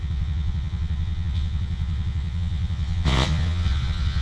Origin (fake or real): fake